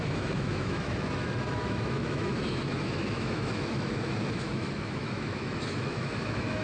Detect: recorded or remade remade